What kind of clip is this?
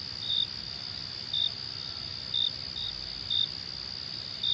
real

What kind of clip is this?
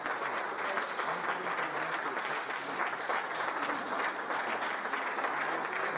real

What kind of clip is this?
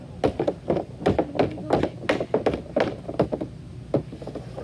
real